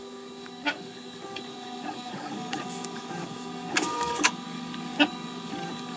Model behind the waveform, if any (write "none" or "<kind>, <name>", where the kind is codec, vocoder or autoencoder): codec, DAC